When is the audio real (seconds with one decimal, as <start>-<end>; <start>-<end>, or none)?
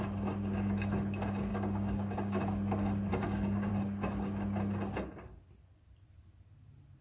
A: 0.0-1.5; 2.4-3.1; 3.7-7.0